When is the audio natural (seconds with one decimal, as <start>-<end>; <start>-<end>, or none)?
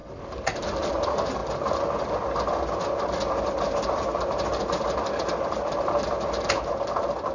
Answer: 0.0-7.3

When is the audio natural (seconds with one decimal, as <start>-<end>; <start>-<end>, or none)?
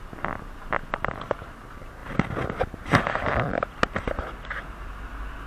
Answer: 0.0-5.5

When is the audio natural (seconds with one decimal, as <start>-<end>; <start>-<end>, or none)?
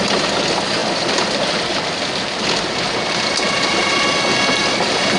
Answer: 0.0-4.6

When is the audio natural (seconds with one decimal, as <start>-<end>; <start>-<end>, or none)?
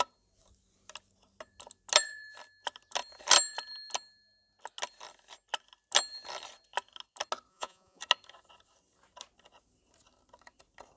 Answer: 0.0-7.5; 8.0-11.0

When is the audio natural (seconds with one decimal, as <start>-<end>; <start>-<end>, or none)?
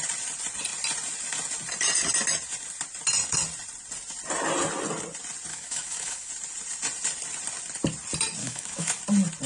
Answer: 0.0-5.5; 6.3-8.4; 9.0-9.5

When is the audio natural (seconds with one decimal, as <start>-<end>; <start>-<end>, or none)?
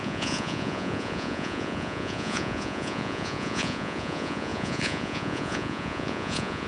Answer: none